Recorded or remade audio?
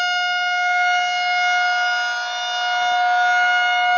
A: recorded